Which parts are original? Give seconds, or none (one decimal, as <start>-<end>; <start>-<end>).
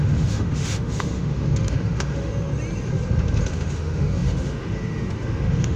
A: 2.3-3.5